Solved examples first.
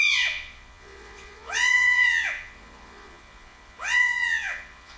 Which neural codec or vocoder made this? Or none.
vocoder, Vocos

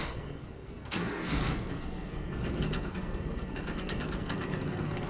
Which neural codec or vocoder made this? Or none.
codec, SNAC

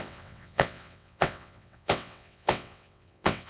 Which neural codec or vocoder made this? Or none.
vocoder, WaveNeXt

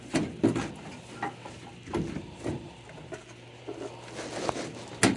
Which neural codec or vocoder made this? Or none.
none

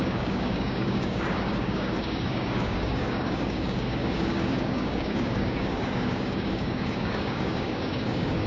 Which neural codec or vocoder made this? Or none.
codec, DAC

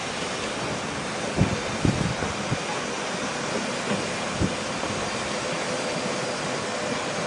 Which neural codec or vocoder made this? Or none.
none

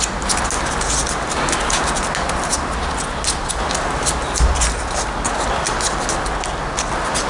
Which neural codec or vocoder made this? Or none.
none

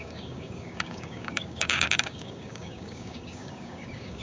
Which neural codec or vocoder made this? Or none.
codec, DAC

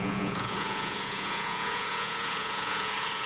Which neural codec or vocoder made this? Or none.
vocoder, Vocos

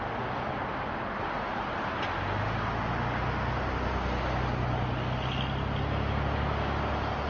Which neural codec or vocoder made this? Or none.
none